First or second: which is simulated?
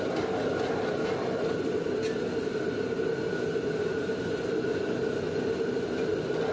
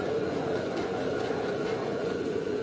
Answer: second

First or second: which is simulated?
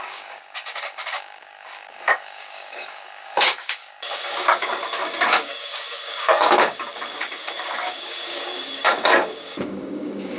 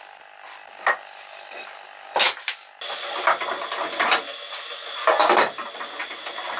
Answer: first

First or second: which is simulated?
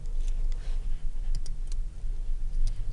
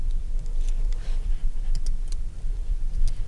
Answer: second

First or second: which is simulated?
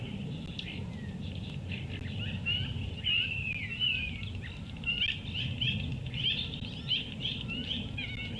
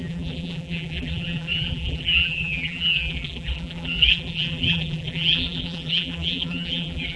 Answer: second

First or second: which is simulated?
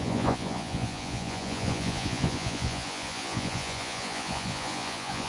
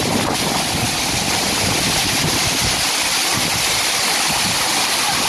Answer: first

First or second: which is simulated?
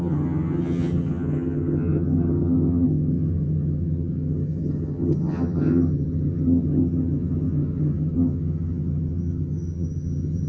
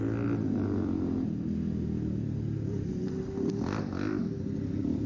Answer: first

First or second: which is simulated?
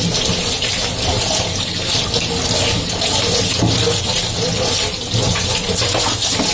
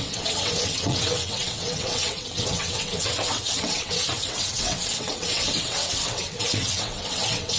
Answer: second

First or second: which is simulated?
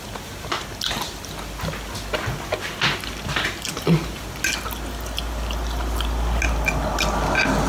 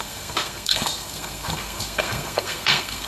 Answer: second